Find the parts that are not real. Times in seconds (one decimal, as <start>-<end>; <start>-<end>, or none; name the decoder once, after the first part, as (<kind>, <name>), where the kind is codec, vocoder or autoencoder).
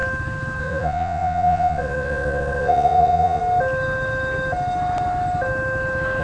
0.6-3.4 (vocoder, Vocos)